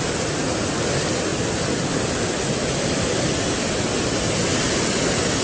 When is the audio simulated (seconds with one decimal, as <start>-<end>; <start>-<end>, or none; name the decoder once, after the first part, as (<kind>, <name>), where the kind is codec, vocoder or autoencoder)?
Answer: none